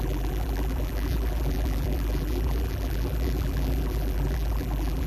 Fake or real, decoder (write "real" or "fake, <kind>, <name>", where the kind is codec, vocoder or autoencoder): fake, vocoder, BigVGAN v2